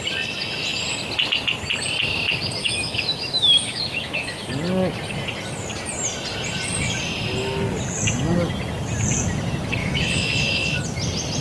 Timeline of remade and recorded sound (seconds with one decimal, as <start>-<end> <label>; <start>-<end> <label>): 0.0-2.6 recorded; 2.6-4.5 remade; 4.5-9.8 recorded; 9.8-10.8 remade; 10.8-11.4 recorded